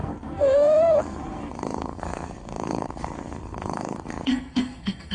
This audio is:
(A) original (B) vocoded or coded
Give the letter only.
B